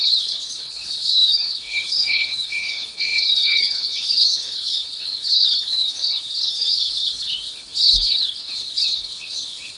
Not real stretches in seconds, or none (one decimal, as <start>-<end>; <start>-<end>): 0.0-9.8